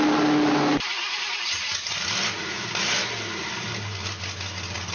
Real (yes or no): yes